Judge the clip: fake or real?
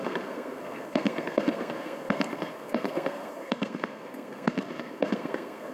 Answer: fake